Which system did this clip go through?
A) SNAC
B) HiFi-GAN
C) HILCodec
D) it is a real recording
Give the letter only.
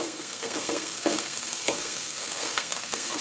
A